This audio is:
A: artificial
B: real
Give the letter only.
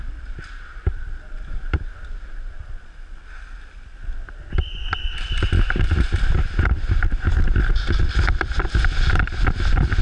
B